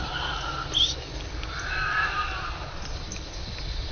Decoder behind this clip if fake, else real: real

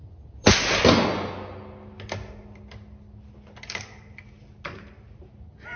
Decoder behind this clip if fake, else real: real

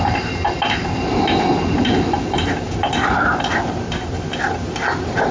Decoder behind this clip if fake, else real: real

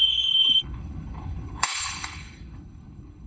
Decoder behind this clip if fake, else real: fake, codec, HILCodec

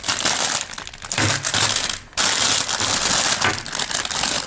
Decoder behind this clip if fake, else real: real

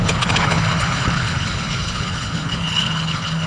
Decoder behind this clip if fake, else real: fake, codec, HILCodec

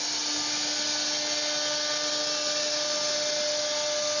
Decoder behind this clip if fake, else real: real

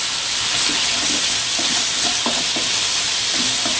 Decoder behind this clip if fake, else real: real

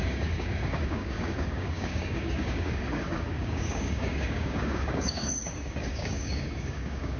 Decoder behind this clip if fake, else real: fake, codec, DAC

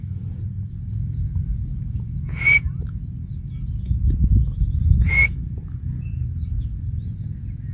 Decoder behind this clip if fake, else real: fake, vocoder, Vocos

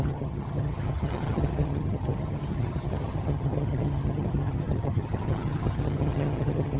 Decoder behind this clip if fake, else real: fake, vocoder, HiFi-GAN